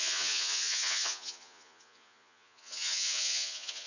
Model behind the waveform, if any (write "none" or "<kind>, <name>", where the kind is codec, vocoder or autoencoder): vocoder, Vocos